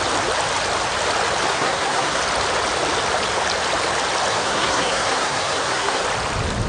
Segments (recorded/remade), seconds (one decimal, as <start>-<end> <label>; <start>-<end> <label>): 0.0-1.5 recorded; 1.5-2.2 remade; 2.2-4.3 recorded; 4.3-6.0 remade; 6.0-6.7 recorded